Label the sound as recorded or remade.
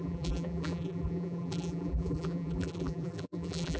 remade